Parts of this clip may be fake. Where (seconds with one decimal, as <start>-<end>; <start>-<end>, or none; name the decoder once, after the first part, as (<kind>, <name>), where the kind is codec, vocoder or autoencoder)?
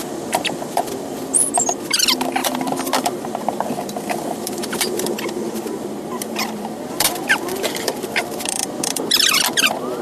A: 0.0-10.0 (vocoder, BigVGAN v2)